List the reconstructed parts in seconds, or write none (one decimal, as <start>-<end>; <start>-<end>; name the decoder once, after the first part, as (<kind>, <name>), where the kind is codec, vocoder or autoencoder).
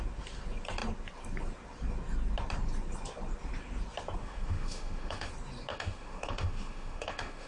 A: 4.2-5.3 (autoencoder, DAC-VAE); 5.7-7.5